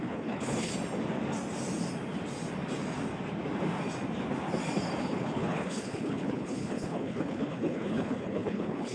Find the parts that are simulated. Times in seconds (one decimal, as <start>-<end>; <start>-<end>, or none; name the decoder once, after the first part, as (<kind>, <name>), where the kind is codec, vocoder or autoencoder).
0.0-0.7 (codec, HILCodec); 5.0-8.9